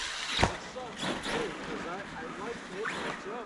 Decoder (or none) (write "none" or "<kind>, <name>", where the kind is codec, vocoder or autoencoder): none